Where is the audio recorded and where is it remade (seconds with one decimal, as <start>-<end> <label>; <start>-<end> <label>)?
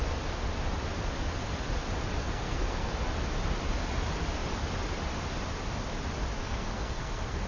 0.0-2.2 recorded; 2.2-2.9 remade; 2.9-6.4 recorded; 6.4-7.5 remade